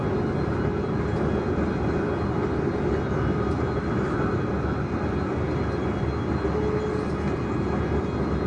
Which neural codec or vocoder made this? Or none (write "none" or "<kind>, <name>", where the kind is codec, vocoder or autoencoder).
none